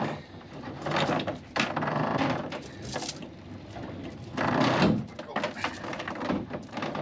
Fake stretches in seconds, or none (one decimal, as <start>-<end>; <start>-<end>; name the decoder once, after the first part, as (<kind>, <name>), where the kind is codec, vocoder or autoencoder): 2.4-4.6 (vocoder, BigVGAN v2); 5.9-6.5